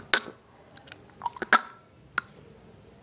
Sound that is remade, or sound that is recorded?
recorded